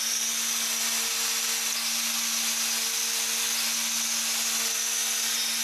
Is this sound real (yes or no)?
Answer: yes